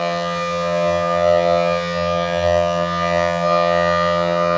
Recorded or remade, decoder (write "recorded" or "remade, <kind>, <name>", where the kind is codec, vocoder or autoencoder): remade, vocoder, HiFi-GAN